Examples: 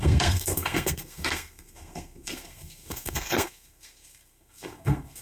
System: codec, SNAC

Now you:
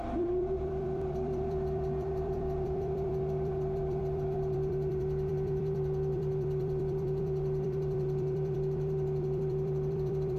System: vocoder, BigVGAN v2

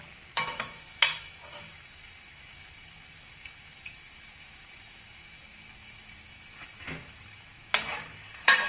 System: autoencoder, DAC-VAE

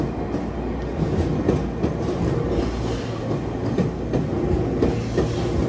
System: none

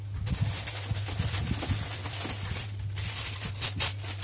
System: none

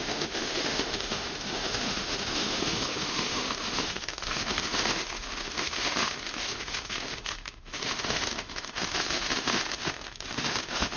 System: autoencoder, DAC-VAE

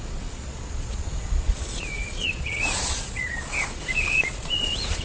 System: vocoder, Vocos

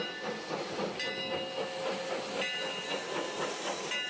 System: none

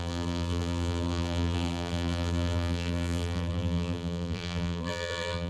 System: vocoder, BigVGAN v2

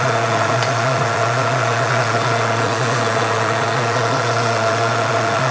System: vocoder, Vocos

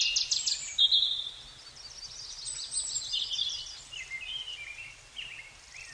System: none